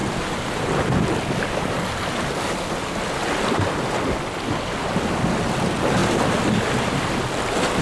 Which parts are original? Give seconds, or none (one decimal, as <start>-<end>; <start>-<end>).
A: 0.0-7.8